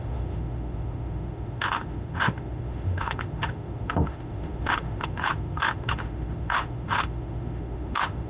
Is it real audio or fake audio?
fake